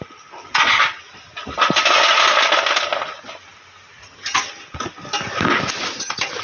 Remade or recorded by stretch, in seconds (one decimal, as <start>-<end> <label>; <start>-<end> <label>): 0.0-4.0 recorded; 4.0-4.5 remade; 4.5-6.4 recorded